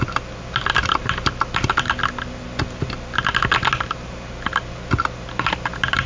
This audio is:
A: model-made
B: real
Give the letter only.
B